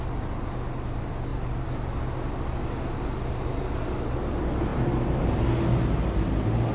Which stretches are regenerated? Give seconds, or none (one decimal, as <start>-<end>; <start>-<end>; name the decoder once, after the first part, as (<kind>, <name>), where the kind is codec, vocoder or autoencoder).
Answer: none